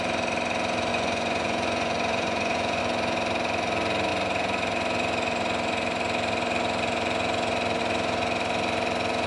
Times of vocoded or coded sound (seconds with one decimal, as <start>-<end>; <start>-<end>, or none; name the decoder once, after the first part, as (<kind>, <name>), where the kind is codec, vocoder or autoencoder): 0.9-2.8 (vocoder, Vocos)

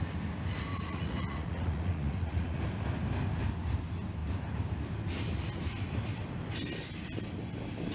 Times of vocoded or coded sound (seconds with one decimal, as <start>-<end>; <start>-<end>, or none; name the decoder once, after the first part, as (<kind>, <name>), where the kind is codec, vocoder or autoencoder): 0.7-2.6 (vocoder, Vocos)